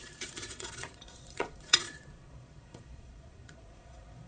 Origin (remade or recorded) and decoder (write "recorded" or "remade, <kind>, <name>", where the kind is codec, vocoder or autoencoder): remade, vocoder, Vocos